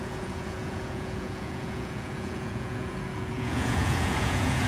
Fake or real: fake